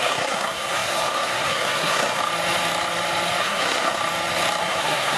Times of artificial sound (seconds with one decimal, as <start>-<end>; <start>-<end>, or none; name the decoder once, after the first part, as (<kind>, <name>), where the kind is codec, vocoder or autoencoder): 0.0-2.2 (codec, SNAC); 3.4-4.0; 4.6-5.2